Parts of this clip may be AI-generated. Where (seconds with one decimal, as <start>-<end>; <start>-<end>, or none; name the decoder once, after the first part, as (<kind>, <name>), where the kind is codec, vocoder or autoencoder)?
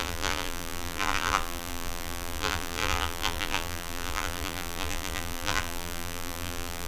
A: 0.0-6.9 (vocoder, BigVGAN v2)